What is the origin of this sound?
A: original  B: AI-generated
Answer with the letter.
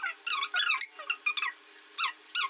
A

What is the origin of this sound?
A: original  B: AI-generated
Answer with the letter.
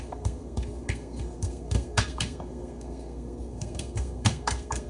B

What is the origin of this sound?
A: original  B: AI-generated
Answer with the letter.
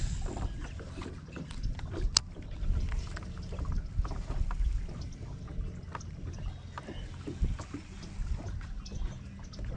A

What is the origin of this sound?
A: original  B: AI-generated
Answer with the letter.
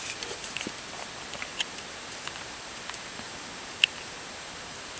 A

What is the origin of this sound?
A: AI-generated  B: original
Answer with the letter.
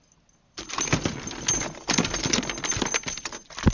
B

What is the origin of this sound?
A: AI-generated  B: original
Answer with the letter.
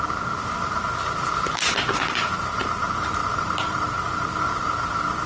A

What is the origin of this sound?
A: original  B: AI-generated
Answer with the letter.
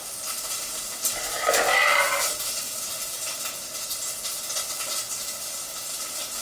A